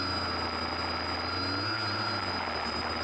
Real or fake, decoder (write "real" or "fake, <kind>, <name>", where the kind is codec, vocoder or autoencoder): real